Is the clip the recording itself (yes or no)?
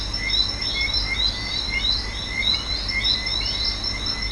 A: yes